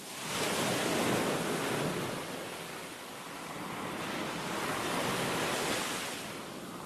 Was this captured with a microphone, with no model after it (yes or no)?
yes